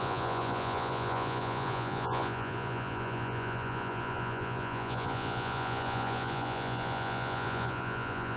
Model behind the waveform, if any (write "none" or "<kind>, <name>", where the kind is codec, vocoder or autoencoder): vocoder, Vocos